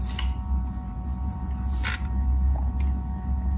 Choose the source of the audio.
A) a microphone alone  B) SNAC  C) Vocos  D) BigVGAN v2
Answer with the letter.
A